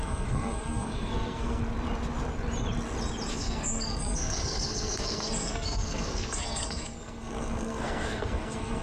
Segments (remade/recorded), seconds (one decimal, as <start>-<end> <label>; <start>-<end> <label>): 0.0-1.6 remade; 1.6-3.3 recorded; 3.3-8.8 remade